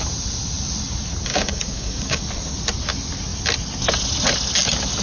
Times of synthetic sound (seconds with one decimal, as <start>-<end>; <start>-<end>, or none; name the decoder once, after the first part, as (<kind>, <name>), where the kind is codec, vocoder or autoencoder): 1.3-2.2 (codec, DAC)